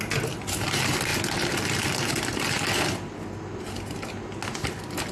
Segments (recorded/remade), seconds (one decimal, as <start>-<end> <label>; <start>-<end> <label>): 0.0-5.1 recorded